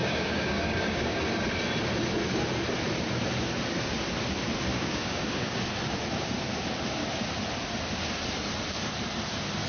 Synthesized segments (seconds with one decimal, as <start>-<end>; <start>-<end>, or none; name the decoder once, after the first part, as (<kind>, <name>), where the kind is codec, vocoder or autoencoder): 0.0-1.2 (codec, DAC); 4.7-5.6